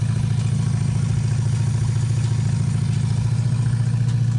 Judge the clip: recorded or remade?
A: recorded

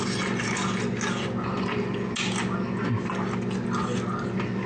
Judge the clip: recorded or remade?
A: recorded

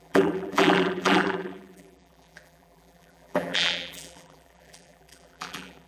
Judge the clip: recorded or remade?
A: remade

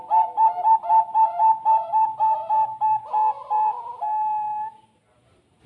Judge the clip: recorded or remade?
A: recorded